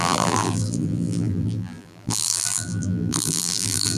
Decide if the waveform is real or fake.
fake